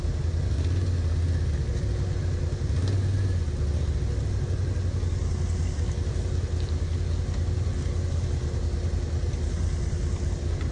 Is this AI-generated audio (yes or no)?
no